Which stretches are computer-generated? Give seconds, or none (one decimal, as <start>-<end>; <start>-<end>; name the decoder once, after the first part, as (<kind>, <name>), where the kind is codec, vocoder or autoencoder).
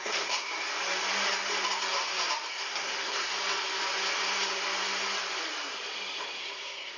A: 0.0-0.5 (codec, SNAC); 2.5-3.3; 6.4-7.0